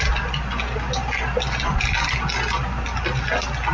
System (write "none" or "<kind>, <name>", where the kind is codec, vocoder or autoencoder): none